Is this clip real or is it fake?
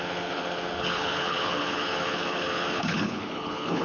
fake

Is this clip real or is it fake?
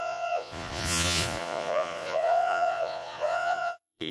fake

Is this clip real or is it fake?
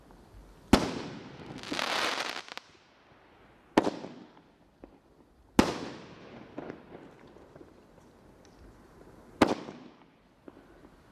real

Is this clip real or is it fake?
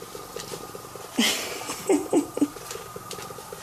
real